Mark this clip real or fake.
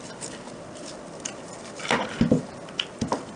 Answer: real